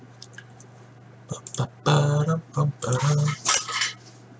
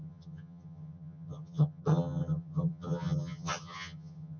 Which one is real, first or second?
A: first